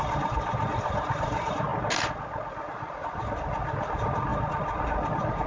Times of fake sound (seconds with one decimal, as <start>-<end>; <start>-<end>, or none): 0.0-1.7; 2.7-4.3; 5.1-5.5